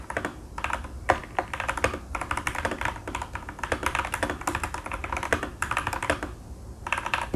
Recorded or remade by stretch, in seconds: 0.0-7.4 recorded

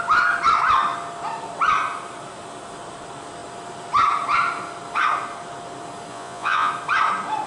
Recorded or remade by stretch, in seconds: 0.0-6.1 recorded; 6.1-6.7 remade; 6.7-7.5 recorded